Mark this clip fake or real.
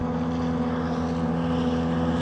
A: real